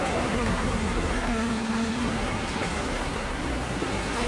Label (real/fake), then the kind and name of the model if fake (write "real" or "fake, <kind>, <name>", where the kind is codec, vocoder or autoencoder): fake, codec, SNAC